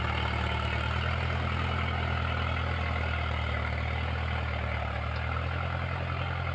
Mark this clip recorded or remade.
recorded